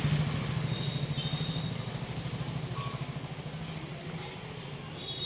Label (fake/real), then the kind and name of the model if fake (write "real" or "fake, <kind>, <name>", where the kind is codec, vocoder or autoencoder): real